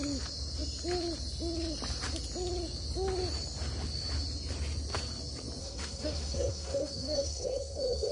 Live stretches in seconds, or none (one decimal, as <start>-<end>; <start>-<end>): 0.0-5.6

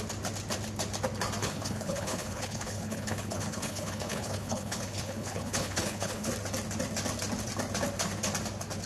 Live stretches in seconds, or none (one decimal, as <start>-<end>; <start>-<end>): 0.0-1.4; 6.3-8.9

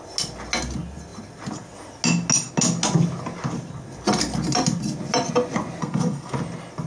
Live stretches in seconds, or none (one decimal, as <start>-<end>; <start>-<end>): 0.0-5.8; 6.3-6.9

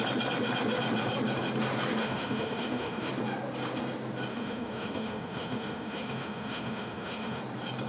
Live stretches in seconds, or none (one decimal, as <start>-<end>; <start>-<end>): 0.0-2.0; 3.1-4.3; 7.4-7.9

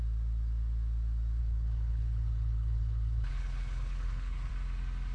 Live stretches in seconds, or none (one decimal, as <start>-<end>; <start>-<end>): 0.0-1.4; 4.5-5.1

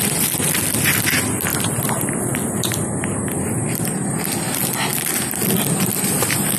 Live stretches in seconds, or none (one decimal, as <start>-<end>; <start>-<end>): 0.0-1.5; 2.5-6.6